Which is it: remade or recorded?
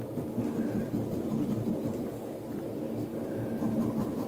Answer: recorded